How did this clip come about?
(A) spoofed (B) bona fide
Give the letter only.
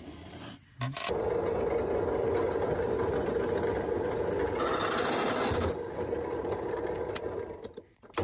B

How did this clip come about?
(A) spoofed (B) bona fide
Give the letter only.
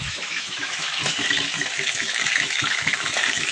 A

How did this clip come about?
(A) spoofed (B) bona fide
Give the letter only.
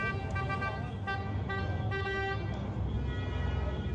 B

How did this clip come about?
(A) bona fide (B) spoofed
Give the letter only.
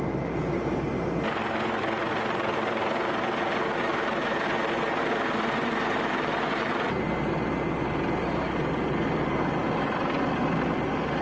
A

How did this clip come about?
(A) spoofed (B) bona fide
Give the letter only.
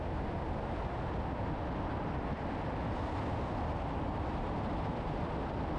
B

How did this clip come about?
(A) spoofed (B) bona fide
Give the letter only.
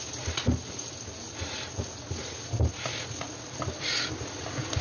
B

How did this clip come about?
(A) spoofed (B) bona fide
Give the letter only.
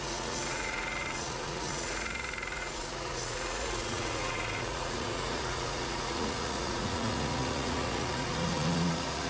A